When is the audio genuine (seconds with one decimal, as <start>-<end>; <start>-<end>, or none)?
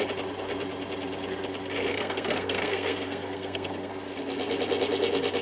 0.0-1.9; 3.9-5.4